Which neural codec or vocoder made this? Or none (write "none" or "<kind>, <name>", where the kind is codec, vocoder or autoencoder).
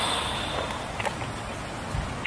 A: none